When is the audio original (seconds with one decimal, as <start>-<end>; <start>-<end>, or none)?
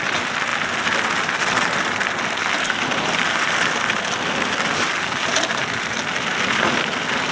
0.0-0.5; 4.9-7.3